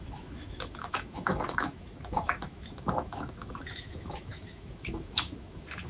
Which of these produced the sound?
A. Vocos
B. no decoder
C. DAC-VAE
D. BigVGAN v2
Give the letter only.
C